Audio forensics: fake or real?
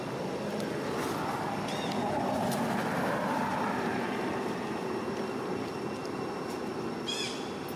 real